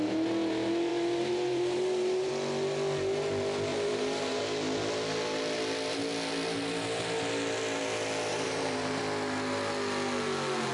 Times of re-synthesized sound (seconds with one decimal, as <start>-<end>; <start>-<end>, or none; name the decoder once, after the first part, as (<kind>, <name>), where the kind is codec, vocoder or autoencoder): 0.9-2.3 (vocoder, BigVGAN v2); 3.7-4.4; 8.3-9.0